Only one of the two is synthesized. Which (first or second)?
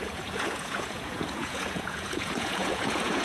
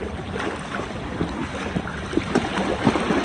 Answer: first